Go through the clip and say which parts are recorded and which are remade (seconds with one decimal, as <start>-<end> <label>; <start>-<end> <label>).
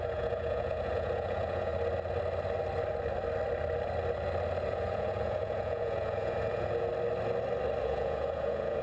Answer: 0.0-1.7 remade; 1.7-4.7 recorded; 4.7-6.9 remade; 6.9-7.8 recorded; 7.8-8.8 remade